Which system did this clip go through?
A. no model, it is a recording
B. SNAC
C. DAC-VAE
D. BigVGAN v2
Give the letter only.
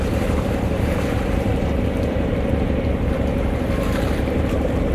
D